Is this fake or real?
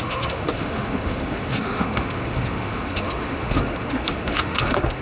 fake